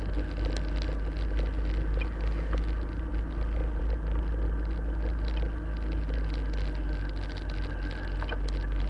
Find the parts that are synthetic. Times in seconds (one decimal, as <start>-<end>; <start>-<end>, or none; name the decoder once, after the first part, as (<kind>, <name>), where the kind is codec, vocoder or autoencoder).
none